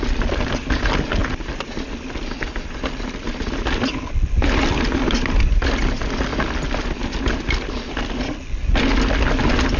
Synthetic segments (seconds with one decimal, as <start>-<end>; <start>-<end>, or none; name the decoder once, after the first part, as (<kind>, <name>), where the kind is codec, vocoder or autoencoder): none